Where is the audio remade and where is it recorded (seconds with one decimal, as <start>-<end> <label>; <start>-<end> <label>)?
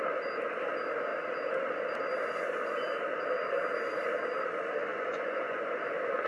0.0-4.9 recorded; 4.9-5.7 remade; 5.7-6.3 recorded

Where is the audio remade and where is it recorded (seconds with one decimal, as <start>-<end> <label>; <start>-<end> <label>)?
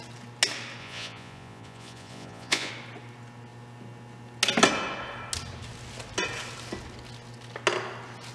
0.0-0.8 recorded; 0.8-2.7 remade; 2.7-8.3 recorded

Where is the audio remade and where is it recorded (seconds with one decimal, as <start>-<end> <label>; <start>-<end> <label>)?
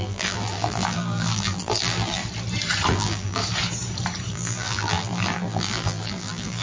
0.0-2.2 remade; 2.2-2.9 recorded; 2.9-3.4 remade; 3.4-4.3 recorded; 4.3-6.6 remade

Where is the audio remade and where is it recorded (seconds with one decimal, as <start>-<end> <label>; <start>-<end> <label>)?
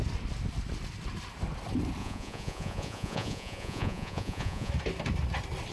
0.0-2.0 recorded; 2.0-4.7 remade; 4.7-5.7 recorded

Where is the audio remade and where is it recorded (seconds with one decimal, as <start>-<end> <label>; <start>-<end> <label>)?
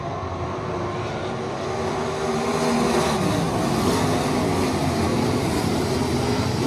0.0-5.1 recorded; 5.1-6.7 remade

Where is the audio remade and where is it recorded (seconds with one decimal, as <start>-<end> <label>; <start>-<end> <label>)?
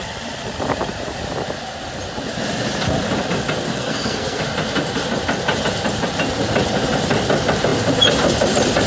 0.0-3.7 recorded; 3.7-4.4 remade; 4.4-8.9 recorded